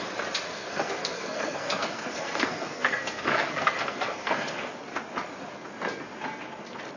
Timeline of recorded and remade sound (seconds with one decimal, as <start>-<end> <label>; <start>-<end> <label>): 0.0-0.5 recorded; 0.5-4.7 remade; 4.7-7.0 recorded